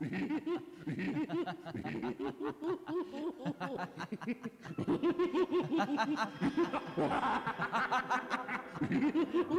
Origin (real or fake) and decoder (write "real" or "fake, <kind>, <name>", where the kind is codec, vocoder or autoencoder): real